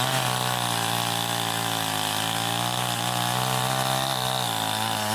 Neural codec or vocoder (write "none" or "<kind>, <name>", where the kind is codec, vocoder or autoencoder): none